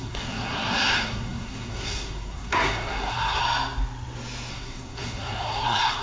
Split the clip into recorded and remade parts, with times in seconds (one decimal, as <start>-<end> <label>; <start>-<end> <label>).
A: 0.0-3.4 remade; 3.4-4.5 recorded; 4.5-6.0 remade

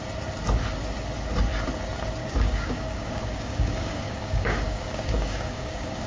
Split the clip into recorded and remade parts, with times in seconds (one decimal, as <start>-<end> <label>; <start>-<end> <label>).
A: 0.0-2.2 recorded; 2.2-6.1 remade

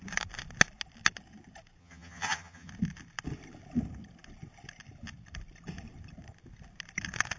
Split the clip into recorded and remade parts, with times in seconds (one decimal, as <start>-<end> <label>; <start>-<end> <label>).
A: 0.0-1.8 recorded; 1.8-2.7 remade; 2.7-7.4 recorded

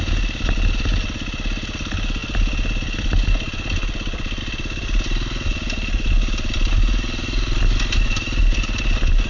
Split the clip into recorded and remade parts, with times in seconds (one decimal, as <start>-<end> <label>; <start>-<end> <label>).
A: 0.0-9.3 recorded

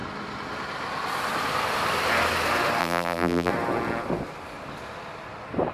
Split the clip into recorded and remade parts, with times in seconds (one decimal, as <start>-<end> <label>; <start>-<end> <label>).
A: 0.0-2.8 recorded; 2.8-3.5 remade; 3.5-5.7 recorded

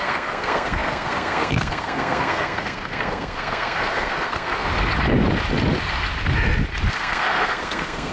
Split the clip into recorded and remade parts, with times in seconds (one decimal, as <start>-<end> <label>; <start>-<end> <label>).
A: 0.0-4.7 remade; 4.7-6.9 recorded; 6.9-8.1 remade